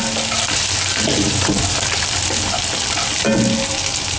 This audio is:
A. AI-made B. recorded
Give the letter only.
B